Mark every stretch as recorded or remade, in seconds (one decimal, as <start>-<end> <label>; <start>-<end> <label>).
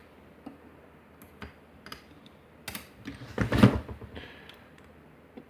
0.0-5.5 recorded